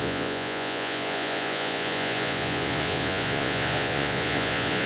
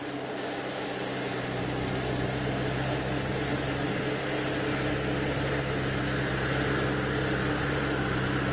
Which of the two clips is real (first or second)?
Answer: second